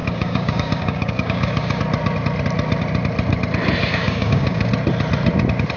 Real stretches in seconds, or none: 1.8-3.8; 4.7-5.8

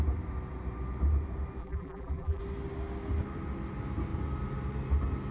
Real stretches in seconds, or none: 0.0-1.6; 2.4-5.3

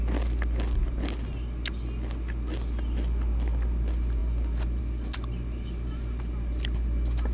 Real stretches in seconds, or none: 0.0-7.3